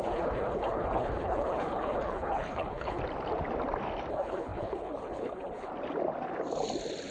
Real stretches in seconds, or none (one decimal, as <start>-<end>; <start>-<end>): 3.0-4.1; 5.7-7.1